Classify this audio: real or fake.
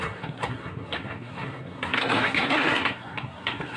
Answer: fake